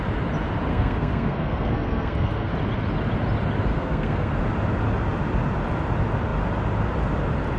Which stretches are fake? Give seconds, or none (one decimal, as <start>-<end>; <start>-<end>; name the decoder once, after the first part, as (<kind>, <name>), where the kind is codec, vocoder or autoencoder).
0.7-2.5 (codec, SNAC); 3.7-4.3